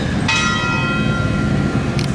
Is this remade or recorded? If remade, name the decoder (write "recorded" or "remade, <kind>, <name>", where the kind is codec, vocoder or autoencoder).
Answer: recorded